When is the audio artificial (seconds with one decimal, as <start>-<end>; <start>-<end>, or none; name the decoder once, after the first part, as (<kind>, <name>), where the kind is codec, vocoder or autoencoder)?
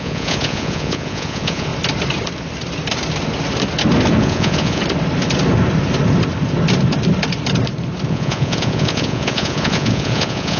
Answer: 0.0-1.7 (vocoder, Vocos); 4.2-4.8; 8.1-10.6